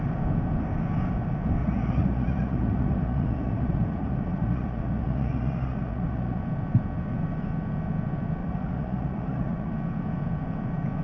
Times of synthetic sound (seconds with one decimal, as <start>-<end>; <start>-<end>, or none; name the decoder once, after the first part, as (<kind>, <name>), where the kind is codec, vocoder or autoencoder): 1.6-6.4 (vocoder, Vocos); 8.4-9.7